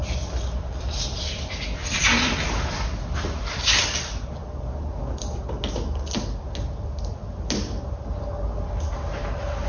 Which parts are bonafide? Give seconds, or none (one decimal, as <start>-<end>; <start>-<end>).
0.0-9.7